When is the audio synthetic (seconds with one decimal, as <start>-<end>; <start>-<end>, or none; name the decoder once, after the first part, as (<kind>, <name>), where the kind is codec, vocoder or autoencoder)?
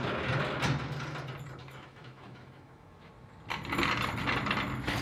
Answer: 1.6-3.1 (autoencoder, DAC-VAE)